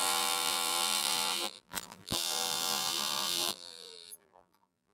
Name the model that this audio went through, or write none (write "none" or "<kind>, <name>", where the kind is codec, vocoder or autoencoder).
vocoder, BigVGAN v2